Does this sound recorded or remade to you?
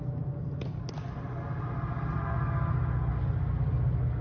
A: recorded